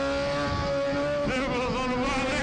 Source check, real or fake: real